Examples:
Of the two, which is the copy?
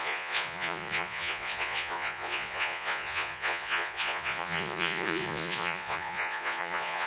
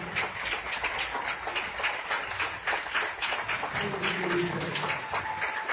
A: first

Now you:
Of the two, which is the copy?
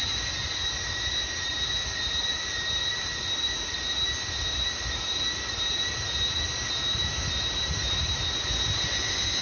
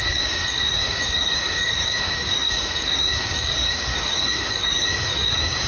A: second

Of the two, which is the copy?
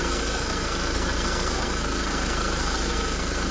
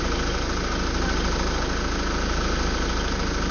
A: first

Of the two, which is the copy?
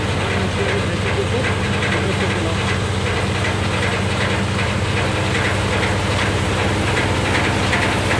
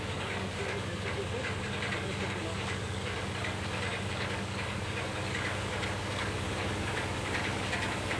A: second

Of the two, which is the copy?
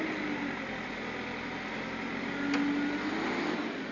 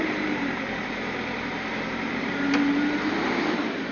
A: second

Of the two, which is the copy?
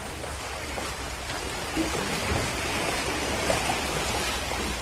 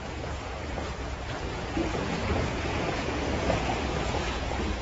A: second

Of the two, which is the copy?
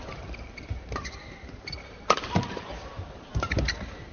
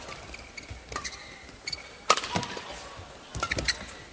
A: first